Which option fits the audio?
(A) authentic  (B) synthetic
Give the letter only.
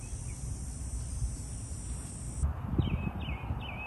A